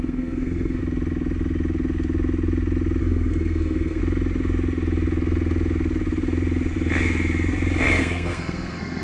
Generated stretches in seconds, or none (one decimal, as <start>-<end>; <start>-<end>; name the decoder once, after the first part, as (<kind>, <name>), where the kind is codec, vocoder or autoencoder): 0.0-0.8 (codec, SNAC); 3.0-4.0; 8.0-9.0